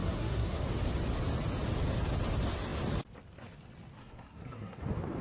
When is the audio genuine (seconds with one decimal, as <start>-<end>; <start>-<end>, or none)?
0.6-4.0; 4.8-5.2